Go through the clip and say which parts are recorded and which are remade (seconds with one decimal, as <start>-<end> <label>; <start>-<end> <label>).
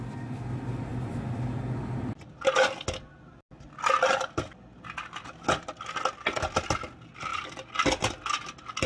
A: 0.0-8.9 recorded